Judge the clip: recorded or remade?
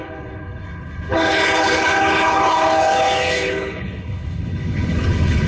remade